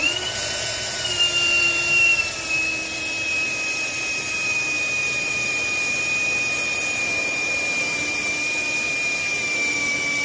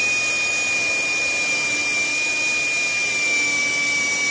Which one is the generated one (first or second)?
first